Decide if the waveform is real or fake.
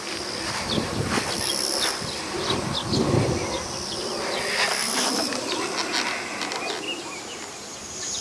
real